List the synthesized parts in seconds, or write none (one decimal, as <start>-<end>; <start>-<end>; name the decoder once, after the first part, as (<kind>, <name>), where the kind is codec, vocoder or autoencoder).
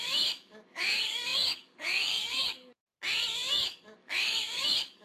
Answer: 0.0-2.9 (codec, DAC); 3.5-5.0